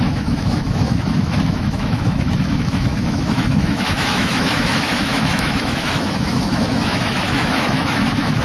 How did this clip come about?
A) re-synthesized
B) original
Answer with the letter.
A